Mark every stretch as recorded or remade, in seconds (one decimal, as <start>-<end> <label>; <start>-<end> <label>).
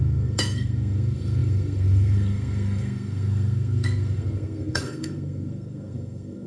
0.0-6.5 remade